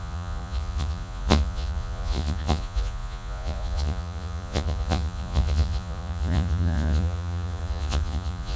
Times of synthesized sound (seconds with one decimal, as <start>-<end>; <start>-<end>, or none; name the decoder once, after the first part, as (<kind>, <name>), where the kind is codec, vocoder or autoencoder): 0.0-8.6 (vocoder, Vocos)